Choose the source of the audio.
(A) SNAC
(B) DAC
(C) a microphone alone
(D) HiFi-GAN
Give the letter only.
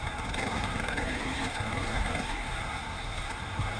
A